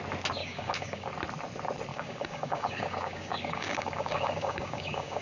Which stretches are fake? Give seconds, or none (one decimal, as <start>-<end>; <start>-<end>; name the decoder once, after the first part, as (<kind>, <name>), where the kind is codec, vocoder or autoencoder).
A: 0.4-1.1 (codec, DAC); 1.9-5.2